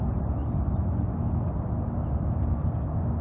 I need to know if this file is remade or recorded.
recorded